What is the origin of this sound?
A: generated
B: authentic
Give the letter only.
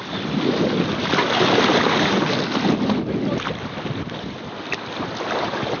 B